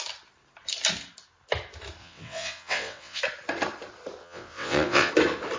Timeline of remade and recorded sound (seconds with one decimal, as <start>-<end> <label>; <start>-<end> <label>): 0.0-2.0 recorded; 2.0-3.2 remade; 3.2-4.2 recorded; 4.2-5.1 remade; 5.1-5.6 recorded